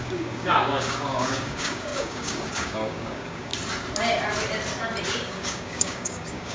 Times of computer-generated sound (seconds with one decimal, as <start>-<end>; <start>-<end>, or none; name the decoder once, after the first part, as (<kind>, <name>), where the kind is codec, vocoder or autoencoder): 0.0-3.5 (codec, DAC); 5.1-6.5